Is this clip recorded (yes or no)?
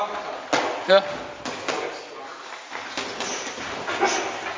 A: yes